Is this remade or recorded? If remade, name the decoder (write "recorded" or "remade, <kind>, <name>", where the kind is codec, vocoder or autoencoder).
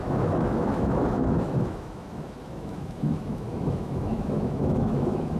remade, autoencoder, DAC-VAE